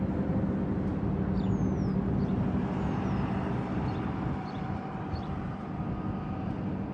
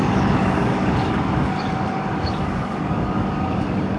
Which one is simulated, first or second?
second